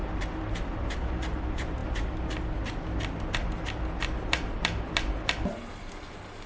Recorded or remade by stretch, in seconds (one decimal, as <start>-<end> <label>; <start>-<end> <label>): 0.0-6.5 recorded